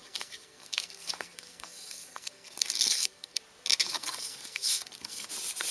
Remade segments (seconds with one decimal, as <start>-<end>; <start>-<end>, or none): 0.0-3.4; 3.8-5.3